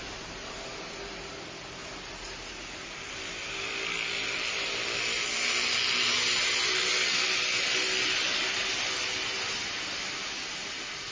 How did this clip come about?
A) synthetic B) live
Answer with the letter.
B